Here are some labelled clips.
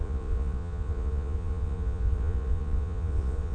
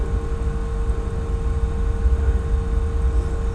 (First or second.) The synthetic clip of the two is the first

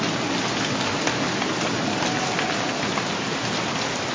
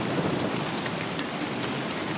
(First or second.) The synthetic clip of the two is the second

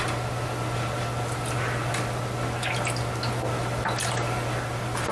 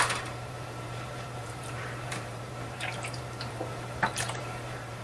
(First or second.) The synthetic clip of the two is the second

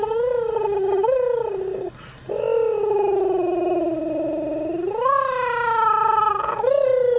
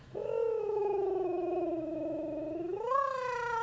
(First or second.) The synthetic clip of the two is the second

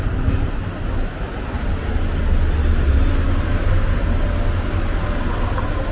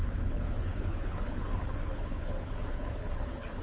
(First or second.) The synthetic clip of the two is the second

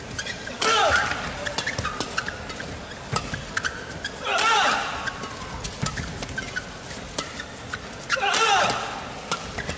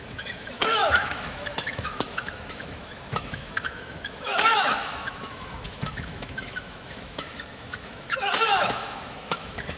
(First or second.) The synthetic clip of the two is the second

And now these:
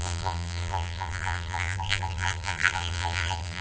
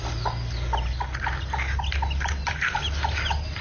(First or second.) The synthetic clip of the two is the first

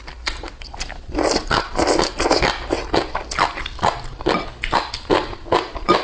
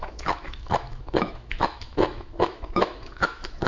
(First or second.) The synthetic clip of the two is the second